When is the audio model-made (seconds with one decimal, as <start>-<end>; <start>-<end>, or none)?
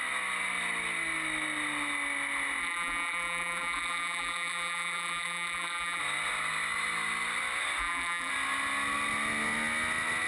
2.6-6.0; 7.8-8.3